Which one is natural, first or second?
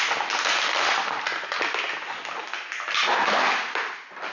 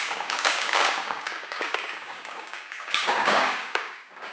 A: first